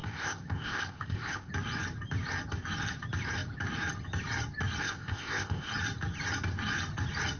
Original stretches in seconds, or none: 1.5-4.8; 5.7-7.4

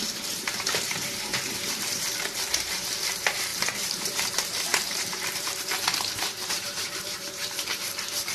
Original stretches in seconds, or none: none

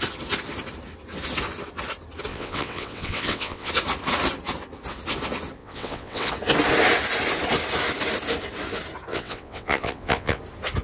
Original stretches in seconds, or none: 0.0-2.3; 3.7-5.6; 6.3-9.1; 10.4-10.8

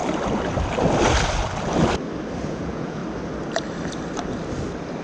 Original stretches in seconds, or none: 0.0-2.5; 3.0-5.0

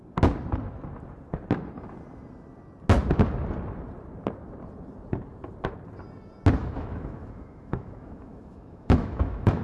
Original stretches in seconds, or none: 0.0-6.6

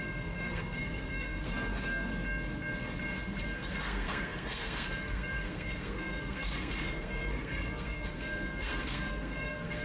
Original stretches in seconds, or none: 2.1-3.4